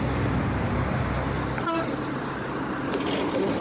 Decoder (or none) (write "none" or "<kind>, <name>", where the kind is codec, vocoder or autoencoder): none